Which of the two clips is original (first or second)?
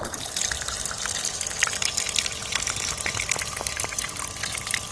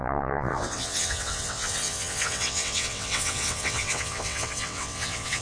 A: first